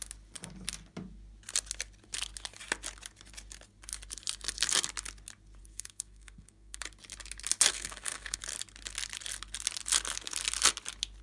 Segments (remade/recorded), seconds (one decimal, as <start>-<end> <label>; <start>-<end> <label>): 0.0-5.6 recorded; 5.6-6.8 remade; 6.8-7.7 recorded; 7.7-8.4 remade; 8.4-11.2 recorded